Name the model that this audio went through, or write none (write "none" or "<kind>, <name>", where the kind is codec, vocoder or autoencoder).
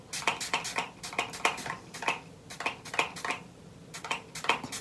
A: none